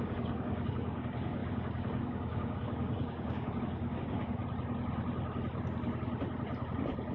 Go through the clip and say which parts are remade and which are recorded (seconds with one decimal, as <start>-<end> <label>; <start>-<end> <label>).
0.0-4.4 remade; 4.4-7.1 recorded